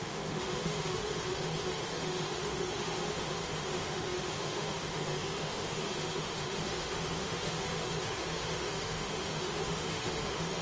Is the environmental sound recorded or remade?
remade